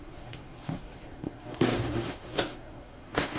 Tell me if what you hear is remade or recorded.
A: remade